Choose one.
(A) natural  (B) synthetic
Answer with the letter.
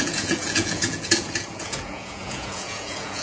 B